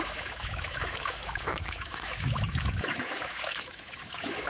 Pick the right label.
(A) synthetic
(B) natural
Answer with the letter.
A